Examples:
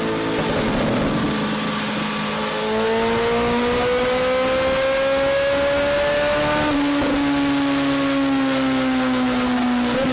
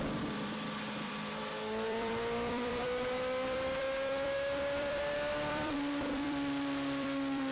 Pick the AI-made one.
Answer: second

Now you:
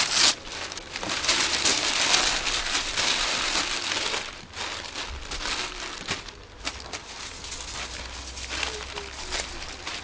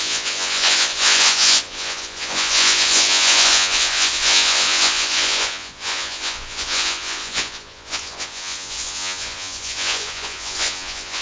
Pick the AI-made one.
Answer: second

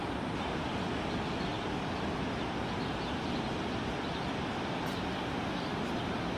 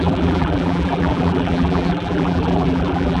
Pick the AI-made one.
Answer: second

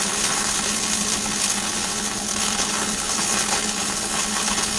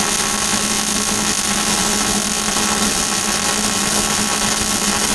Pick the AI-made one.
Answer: first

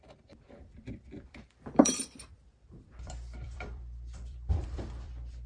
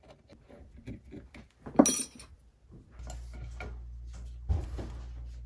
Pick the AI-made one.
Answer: first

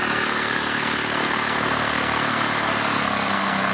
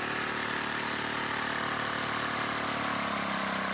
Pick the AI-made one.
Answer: first